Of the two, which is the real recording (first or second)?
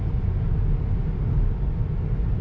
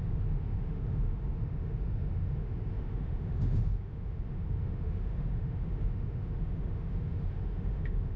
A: first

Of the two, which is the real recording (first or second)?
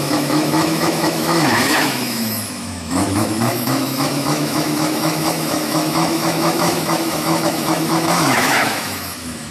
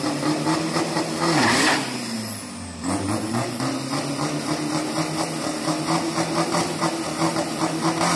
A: second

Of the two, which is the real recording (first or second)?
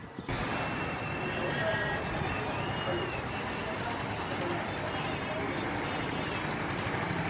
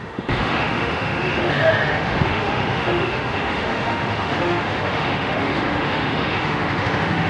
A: first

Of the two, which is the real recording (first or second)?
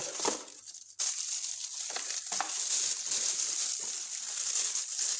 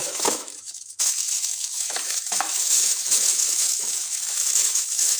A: first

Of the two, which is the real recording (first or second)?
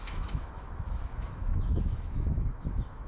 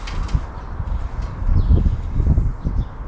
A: second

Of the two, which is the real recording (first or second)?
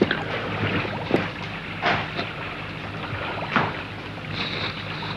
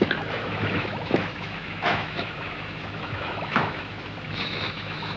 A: first